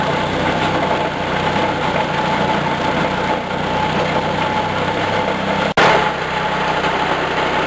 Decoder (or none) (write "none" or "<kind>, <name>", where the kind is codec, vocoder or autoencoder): none